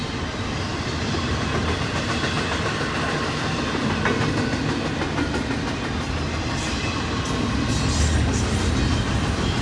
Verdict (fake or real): real